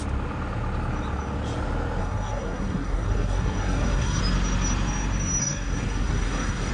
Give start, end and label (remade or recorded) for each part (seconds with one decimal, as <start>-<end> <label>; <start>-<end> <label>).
0.0-2.0 recorded; 2.0-4.2 remade; 4.2-5.4 recorded; 5.4-6.7 remade